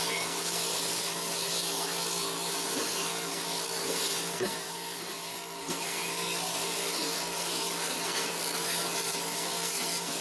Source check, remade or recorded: remade